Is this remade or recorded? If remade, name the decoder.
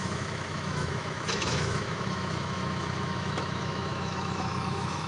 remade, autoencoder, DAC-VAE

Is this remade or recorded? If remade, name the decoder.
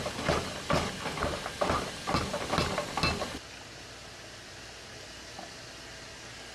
recorded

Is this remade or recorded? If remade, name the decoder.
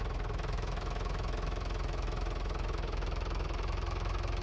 remade, autoencoder, DAC-VAE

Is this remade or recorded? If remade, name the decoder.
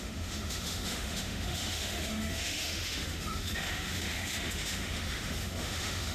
remade, autoencoder, DAC-VAE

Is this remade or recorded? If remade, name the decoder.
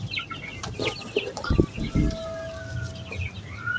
recorded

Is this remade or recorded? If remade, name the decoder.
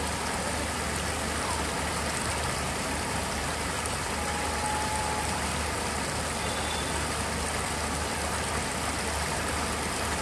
recorded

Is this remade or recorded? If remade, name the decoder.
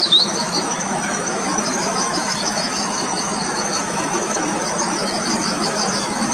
remade, autoencoder, DAC-VAE